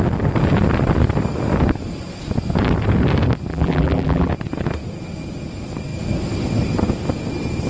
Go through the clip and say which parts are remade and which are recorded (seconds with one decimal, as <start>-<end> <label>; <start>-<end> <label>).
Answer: 0.0-3.5 recorded; 3.5-4.3 remade; 4.3-7.7 recorded